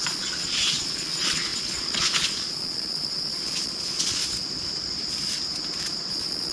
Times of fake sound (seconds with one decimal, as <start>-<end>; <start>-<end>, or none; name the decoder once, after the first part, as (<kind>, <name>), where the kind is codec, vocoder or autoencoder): 0.0-4.2 (vocoder, Vocos); 6.1-6.5